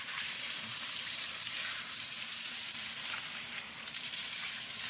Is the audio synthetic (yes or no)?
yes